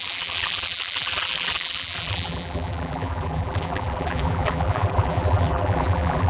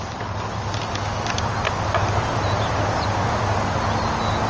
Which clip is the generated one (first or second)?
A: first